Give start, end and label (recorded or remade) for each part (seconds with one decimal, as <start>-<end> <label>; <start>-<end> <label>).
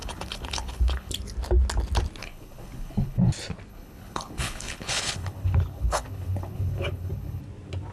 0.0-1.1 remade; 1.1-2.2 recorded; 2.2-3.3 remade; 3.3-3.7 recorded; 3.7-7.4 remade; 7.4-7.9 recorded